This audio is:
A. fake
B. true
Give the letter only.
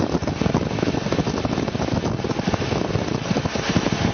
B